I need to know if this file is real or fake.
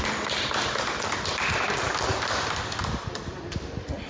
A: real